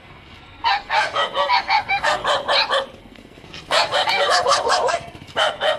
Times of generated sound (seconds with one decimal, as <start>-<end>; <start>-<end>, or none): 0.0-2.2; 3.0-5.8